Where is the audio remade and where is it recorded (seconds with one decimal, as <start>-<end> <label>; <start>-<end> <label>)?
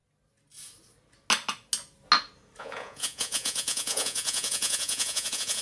0.0-2.6 recorded; 2.6-5.6 remade